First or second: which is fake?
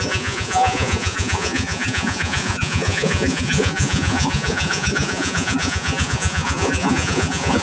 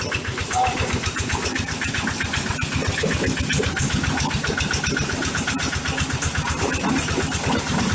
first